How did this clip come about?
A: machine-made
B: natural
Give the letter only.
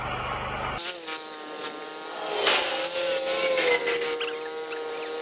B